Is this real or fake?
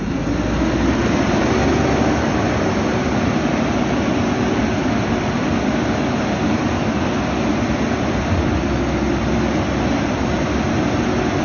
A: real